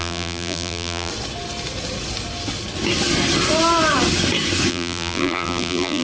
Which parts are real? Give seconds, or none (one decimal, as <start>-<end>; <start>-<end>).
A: 1.1-4.7